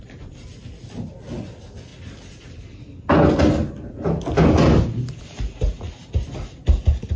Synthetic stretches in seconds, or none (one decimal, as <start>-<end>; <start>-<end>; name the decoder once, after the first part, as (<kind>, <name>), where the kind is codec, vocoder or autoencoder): none